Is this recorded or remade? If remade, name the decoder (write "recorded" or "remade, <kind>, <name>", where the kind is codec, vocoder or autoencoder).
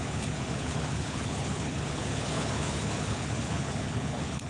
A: remade, codec, HILCodec